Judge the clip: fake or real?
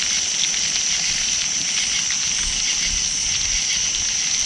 real